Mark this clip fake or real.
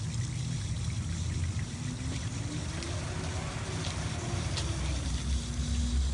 real